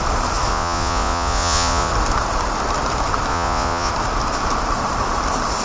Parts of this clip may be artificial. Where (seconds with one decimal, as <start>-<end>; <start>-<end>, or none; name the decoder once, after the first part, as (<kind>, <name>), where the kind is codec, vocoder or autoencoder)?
0.5-1.9 (vocoder, Vocos); 3.3-3.9

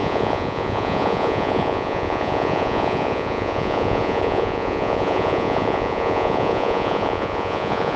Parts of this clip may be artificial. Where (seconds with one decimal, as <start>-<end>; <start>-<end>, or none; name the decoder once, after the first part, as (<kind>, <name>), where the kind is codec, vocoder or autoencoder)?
0.0-8.0 (vocoder, Vocos)

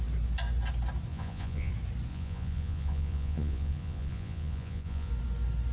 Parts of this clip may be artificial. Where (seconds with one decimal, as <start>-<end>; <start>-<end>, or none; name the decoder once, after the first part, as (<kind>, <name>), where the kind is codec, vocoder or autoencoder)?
1.1-1.7 (vocoder, Vocos); 2.1-5.1

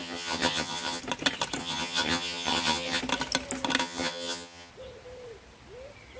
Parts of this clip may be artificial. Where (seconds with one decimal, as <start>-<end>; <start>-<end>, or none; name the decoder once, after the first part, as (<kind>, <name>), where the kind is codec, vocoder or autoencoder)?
0.0-1.0 (vocoder, HiFi-GAN); 1.6-3.0; 3.8-4.7

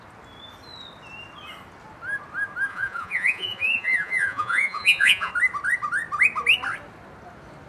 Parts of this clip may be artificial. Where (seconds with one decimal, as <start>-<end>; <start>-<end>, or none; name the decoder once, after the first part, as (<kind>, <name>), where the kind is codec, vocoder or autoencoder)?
2.7-5.3 (vocoder, Vocos)

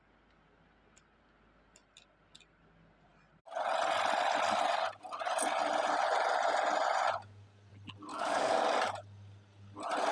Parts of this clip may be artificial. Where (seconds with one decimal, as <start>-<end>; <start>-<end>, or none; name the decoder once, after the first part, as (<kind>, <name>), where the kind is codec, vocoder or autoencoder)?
8.1-8.6 (codec, DAC)